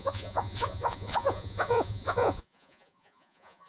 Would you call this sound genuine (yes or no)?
no